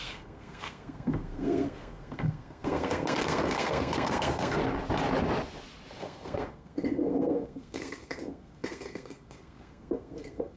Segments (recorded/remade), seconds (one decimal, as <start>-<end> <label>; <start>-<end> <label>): 0.0-4.6 remade; 4.6-6.0 recorded; 6.0-10.6 remade